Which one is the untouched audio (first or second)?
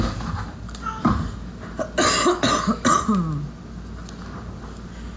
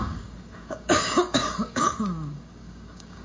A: first